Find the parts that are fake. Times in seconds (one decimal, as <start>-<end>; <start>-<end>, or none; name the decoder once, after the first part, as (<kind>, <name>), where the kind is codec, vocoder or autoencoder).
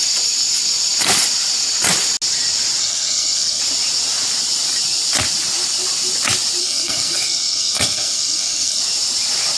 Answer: 2.8-3.6 (codec, SNAC); 6.6-8.8